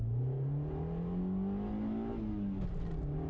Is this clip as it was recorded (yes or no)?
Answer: yes